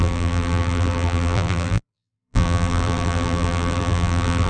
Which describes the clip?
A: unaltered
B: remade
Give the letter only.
B